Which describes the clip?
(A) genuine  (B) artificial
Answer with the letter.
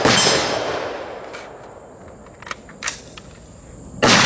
A